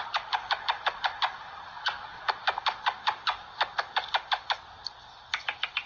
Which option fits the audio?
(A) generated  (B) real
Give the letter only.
B